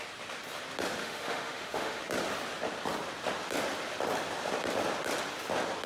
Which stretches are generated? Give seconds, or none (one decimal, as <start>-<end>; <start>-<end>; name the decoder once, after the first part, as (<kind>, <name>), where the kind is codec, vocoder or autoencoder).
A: 1.0-2.0 (autoencoder, DAC-VAE)